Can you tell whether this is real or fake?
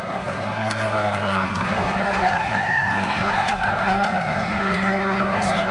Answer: fake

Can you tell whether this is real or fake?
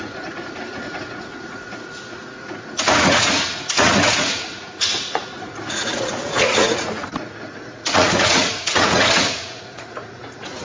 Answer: fake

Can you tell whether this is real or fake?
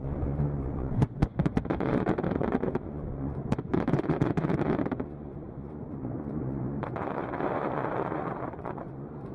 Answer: fake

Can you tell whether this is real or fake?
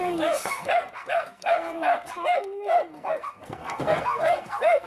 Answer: fake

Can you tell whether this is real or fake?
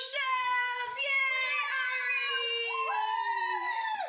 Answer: fake